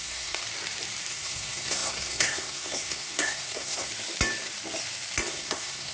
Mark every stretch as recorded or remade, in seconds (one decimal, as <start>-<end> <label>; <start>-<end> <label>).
0.0-0.4 remade; 0.4-1.1 recorded; 1.1-3.9 remade; 3.9-5.3 recorded; 5.3-5.9 remade